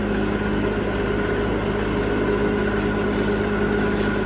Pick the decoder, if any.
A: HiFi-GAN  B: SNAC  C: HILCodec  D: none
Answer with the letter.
D